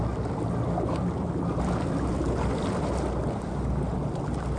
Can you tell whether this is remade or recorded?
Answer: recorded